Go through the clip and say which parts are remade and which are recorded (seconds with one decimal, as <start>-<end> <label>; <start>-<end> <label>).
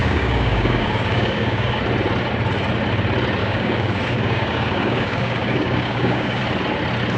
0.0-1.8 remade; 1.8-3.4 recorded; 3.4-6.4 remade; 6.4-7.2 recorded